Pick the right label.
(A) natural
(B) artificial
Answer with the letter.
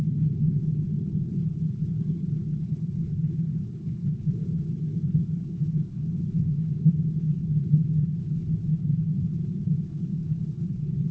B